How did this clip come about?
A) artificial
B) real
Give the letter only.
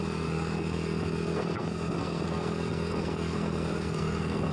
A